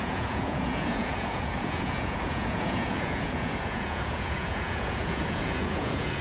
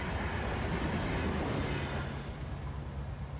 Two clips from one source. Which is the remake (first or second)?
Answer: first